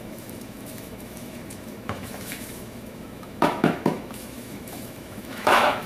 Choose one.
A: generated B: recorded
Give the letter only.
A